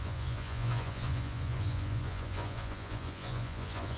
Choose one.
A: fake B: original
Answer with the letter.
A